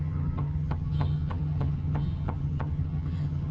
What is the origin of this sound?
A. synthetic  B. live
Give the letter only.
A